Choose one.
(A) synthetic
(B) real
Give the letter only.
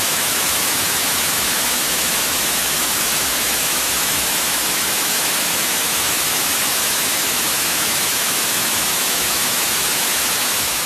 A